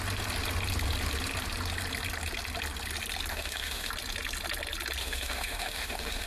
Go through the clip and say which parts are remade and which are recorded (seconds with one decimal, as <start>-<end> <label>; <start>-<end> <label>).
0.0-3.3 recorded; 3.3-3.9 remade; 3.9-5.0 recorded; 5.0-6.3 remade